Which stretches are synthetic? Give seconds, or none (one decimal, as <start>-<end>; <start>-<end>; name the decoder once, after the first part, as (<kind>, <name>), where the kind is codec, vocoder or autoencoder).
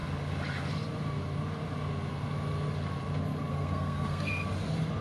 3.5-4.3 (codec, SNAC)